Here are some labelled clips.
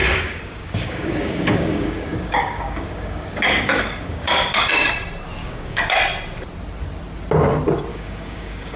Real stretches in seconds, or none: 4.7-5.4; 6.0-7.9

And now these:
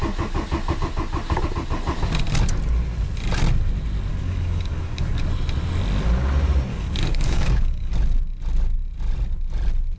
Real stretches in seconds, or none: 0.0-4.1; 5.2-6.7; 7.9-10.0

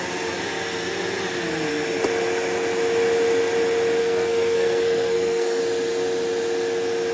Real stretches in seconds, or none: 0.0-4.0; 5.6-7.1

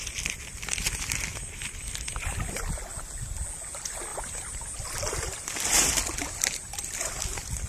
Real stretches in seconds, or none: 0.0-1.3; 2.6-4.1; 6.0-7.7

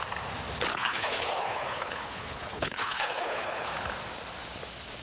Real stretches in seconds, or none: 0.0-0.7; 3.7-5.0